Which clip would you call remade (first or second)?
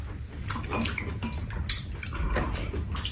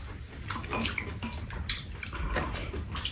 second